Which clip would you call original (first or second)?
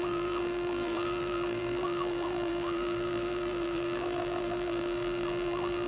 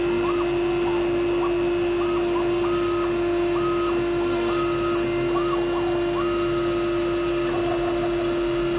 second